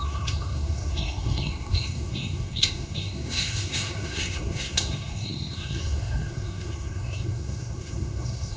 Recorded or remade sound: remade